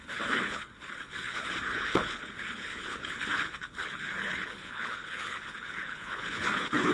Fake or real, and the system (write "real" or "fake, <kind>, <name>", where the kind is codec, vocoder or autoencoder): fake, codec, HILCodec